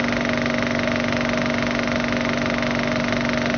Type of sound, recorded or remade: recorded